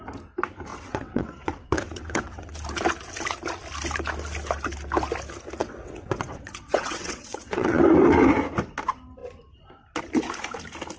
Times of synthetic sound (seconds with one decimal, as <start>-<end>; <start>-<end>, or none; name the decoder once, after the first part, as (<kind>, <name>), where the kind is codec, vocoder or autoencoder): 0.7-2.5 (vocoder, WaveNeXt); 5.6-7.8